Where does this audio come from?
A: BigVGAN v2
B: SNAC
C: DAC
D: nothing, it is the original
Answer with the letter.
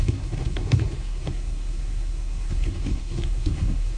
B